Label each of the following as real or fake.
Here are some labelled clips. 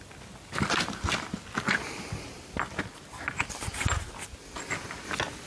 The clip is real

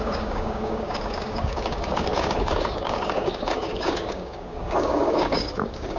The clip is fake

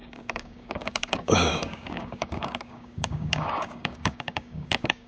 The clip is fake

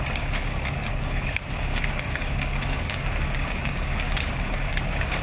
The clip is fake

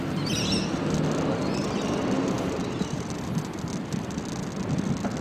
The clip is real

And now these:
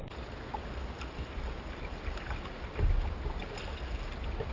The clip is real